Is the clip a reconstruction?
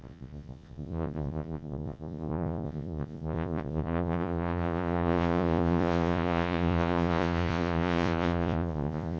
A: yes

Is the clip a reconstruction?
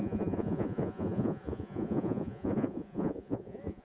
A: yes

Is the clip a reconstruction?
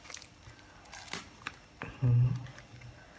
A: no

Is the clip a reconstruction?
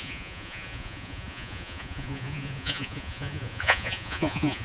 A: yes